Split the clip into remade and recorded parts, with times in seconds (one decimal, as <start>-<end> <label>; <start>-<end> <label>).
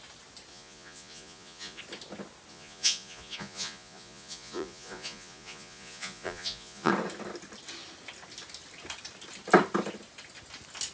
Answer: 0.0-0.5 recorded; 0.5-1.8 remade; 1.8-2.5 recorded; 2.5-6.9 remade; 6.9-10.9 recorded